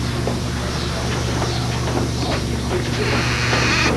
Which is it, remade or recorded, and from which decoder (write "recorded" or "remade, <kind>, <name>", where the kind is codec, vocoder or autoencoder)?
recorded